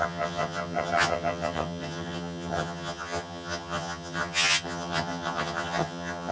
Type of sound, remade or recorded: remade